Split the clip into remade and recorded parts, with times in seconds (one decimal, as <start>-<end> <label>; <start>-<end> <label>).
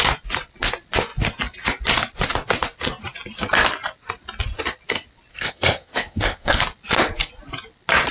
0.0-5.3 recorded; 5.3-6.6 remade; 6.6-8.1 recorded